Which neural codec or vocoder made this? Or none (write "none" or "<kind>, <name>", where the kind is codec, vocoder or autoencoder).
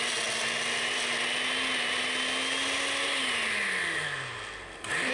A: none